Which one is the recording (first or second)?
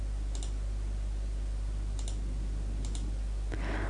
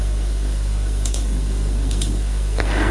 first